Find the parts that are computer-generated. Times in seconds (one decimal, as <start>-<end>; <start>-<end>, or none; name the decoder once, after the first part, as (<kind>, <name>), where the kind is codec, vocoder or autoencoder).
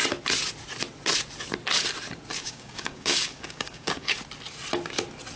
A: 2.4-4.1 (codec, DAC)